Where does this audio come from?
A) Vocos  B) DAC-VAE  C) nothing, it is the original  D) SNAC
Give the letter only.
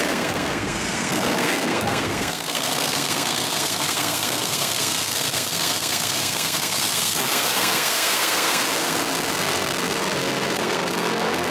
D